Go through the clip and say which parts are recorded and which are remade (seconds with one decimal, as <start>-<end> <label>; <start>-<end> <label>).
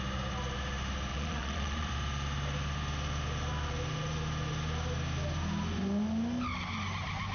0.0-1.1 recorded; 1.1-1.9 remade; 1.9-7.3 recorded